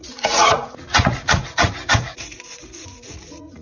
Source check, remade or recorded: remade